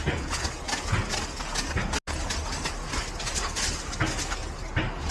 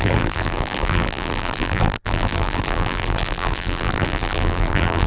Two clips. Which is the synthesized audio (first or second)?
second